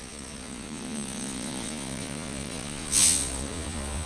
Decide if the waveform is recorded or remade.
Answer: remade